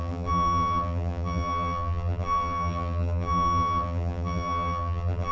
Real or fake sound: fake